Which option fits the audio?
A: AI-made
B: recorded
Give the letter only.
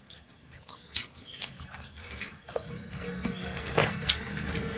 A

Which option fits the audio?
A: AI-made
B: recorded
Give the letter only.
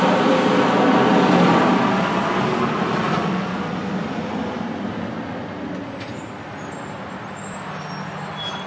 B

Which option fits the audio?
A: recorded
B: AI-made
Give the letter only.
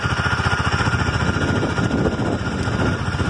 A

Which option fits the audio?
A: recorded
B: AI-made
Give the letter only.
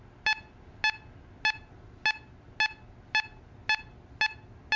A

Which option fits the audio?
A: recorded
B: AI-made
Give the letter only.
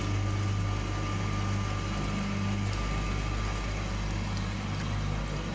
A